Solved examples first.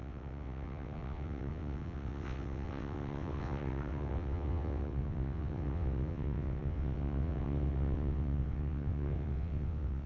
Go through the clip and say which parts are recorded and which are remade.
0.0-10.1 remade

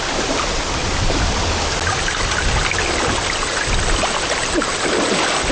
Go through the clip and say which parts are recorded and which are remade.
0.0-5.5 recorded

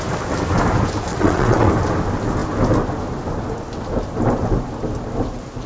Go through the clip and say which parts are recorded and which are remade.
0.0-1.1 recorded; 1.1-1.7 remade; 1.7-5.7 recorded

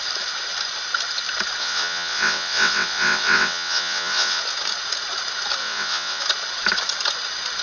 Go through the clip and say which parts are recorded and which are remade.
0.0-1.6 recorded; 1.6-4.4 remade; 4.4-5.6 recorded; 5.6-6.2 remade; 6.2-7.6 recorded

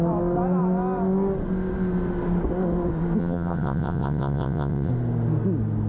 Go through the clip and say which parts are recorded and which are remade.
0.0-3.2 recorded; 3.2-4.9 remade; 4.9-5.9 recorded